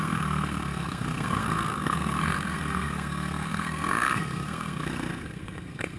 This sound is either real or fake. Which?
fake